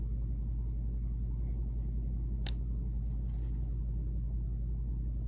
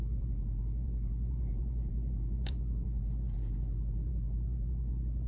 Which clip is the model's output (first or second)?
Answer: second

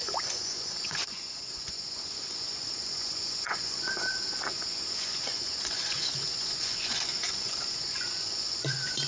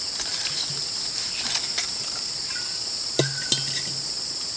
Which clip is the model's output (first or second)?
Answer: first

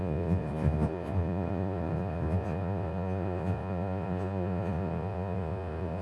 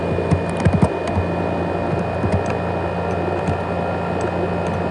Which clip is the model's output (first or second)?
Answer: first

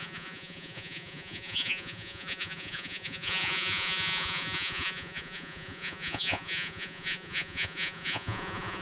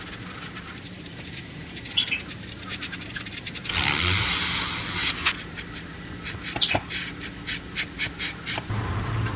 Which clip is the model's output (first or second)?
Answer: first